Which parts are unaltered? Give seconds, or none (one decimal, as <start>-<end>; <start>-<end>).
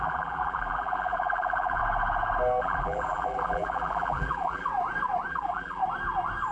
1.8-2.6; 4.7-5.3; 5.8-6.5